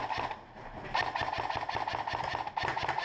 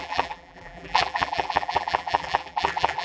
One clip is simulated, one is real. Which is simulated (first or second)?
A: second